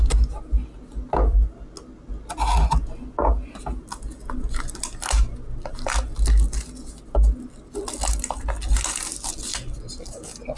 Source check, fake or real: real